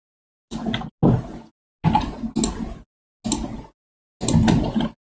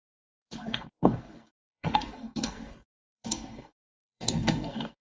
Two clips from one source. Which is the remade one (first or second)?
second